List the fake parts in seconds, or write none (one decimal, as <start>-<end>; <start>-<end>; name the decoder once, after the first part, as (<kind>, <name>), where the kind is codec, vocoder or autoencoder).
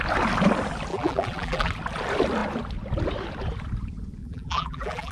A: 0.9-1.7 (vocoder, BigVGAN v2); 4.2-5.1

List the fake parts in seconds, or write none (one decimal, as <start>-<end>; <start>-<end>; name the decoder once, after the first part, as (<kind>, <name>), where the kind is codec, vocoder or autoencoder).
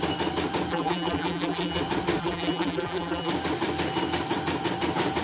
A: 0.7-1.8 (vocoder, BigVGAN v2); 2.2-3.3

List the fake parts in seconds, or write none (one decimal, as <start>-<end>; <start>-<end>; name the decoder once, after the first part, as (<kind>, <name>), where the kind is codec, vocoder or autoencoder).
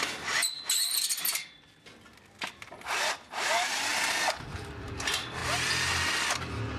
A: 3.9-4.8 (vocoder, BigVGAN v2)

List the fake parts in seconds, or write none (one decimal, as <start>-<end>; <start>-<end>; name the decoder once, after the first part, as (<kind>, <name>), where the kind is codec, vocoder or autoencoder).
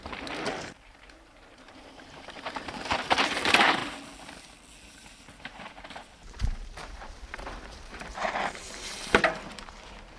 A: 0.0-3.8 (vocoder, BigVGAN v2); 5.4-10.2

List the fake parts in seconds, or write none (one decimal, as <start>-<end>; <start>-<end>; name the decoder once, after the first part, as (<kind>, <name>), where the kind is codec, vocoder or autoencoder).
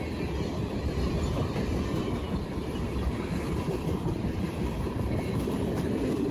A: 2.6-6.3 (vocoder, BigVGAN v2)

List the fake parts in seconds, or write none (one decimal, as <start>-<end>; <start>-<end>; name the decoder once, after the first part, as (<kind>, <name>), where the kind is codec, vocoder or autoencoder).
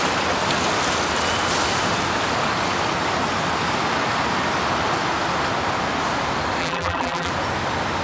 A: 6.6-7.3 (vocoder, BigVGAN v2)